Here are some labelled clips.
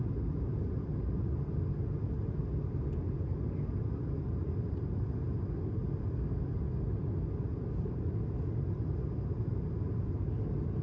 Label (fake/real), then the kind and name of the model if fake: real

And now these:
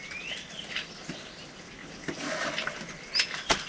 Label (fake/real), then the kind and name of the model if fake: real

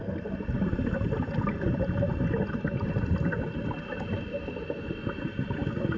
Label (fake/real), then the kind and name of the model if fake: real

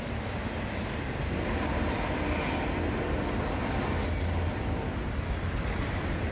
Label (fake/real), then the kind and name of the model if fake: real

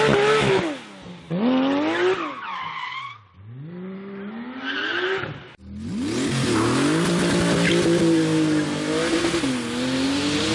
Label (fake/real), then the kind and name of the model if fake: real